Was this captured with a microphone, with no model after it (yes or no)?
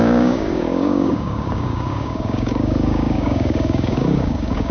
no